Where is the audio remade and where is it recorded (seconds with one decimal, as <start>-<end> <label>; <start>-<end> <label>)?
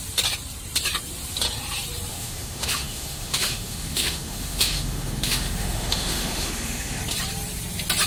0.0-2.1 recorded; 2.1-7.0 remade; 7.0-8.1 recorded